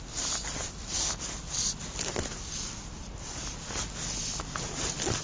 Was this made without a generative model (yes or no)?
yes